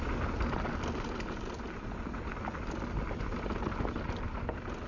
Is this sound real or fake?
real